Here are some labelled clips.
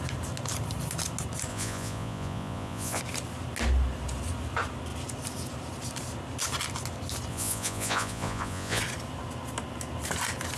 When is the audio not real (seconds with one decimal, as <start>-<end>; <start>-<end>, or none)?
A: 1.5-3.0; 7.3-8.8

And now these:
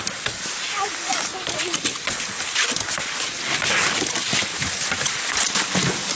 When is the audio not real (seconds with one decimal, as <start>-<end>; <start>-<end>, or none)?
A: none

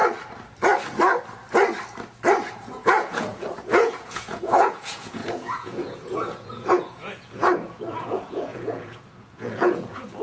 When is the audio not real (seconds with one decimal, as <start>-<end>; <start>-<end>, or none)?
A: 2.5-10.2

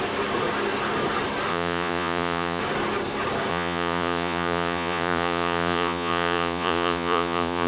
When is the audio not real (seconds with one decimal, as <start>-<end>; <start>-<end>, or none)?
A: 1.5-2.6; 3.5-7.7

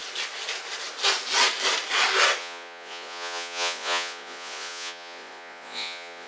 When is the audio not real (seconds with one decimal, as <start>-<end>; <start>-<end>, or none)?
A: 2.4-6.3

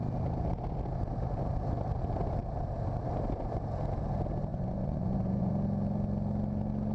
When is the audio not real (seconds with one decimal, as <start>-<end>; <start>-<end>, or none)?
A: 4.5-5.5